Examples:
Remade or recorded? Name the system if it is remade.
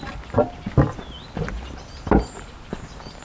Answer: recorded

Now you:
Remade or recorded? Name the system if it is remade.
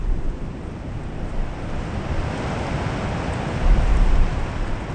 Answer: recorded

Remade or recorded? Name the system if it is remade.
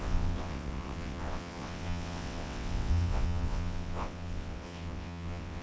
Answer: remade, vocoder, WaveNeXt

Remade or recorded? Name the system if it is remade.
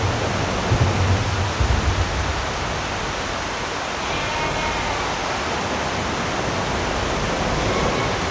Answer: recorded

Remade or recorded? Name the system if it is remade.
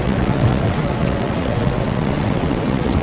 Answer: remade, vocoder, WaveNeXt